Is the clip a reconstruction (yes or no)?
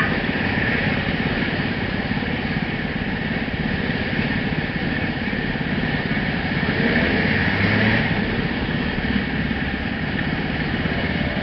no